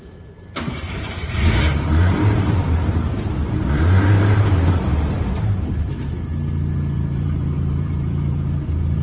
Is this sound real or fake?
fake